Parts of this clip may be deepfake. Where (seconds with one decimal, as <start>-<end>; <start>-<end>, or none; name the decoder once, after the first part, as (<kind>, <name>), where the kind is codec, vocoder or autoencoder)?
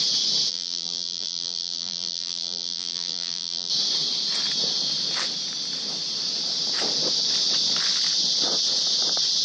0.5-3.7 (vocoder, BigVGAN v2)